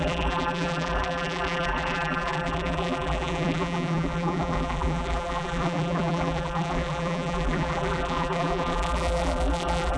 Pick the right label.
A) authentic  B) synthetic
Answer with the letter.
B